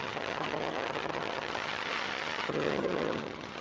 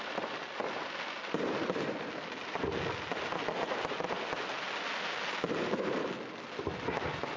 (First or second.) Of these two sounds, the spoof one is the first